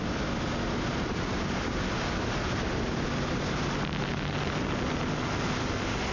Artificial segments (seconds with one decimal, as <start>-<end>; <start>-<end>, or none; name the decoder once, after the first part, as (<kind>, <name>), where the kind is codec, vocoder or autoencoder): none